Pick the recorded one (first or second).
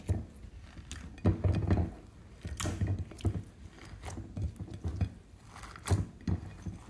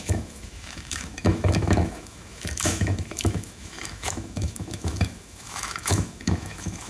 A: first